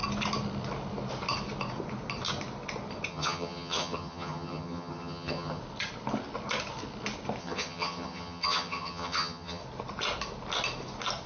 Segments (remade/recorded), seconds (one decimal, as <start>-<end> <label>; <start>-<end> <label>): 0.0-3.1 recorded; 3.1-5.6 remade; 5.6-7.4 recorded; 7.4-9.6 remade; 9.6-11.3 recorded